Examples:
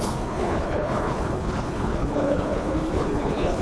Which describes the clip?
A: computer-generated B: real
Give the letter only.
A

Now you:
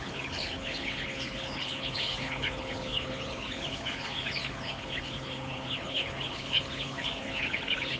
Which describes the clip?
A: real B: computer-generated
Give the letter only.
B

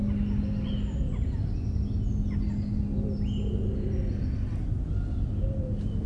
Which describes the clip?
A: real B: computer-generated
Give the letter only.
A